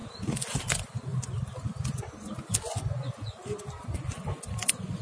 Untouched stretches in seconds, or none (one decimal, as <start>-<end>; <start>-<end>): 0.0-5.0